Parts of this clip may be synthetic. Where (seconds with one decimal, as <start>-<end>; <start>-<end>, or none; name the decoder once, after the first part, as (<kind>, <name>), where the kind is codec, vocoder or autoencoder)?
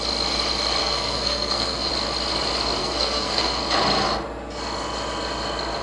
0.8-1.9 (codec, SNAC); 2.8-3.6